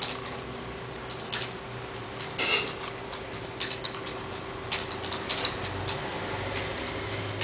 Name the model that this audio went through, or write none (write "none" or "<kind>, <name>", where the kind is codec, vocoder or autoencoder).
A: none